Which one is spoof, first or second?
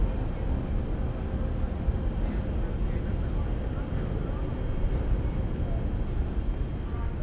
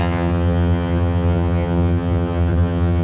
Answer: second